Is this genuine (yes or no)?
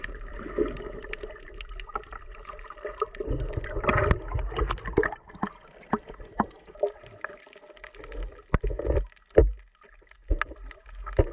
yes